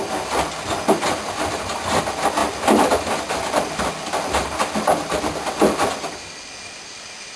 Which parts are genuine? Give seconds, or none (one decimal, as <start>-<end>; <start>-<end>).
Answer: 0.0-7.4